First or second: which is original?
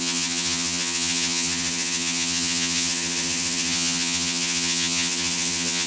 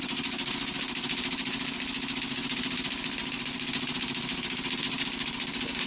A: second